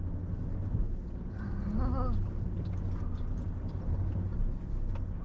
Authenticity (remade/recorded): recorded